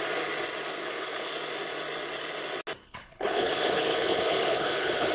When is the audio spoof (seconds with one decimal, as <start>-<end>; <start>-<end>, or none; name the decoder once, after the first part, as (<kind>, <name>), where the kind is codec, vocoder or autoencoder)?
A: 0.8-1.3 (codec, HILCodec); 2.8-5.1